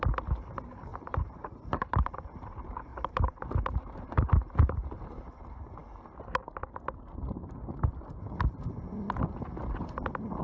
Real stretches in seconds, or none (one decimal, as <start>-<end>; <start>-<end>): 0.0-0.9; 2.2-2.9; 5.0-10.4